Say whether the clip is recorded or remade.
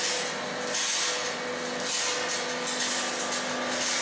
recorded